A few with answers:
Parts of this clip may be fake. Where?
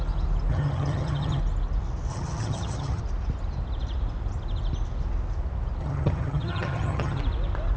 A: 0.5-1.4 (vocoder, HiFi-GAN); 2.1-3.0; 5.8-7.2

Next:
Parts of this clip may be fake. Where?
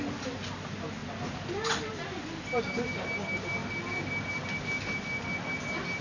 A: none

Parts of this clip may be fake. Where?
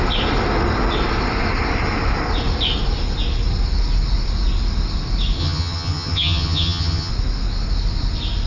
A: 5.4-7.1 (vocoder, HiFi-GAN)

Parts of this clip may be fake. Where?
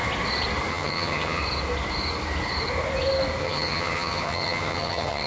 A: 0.7-1.4 (vocoder, HiFi-GAN); 3.4-5.3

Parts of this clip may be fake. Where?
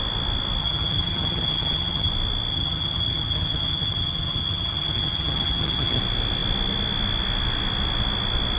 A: 0.6-2.1 (vocoder, HiFi-GAN); 2.5-6.0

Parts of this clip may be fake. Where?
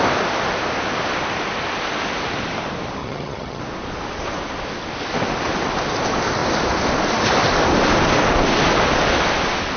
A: 3.0-3.6 (vocoder, HiFi-GAN)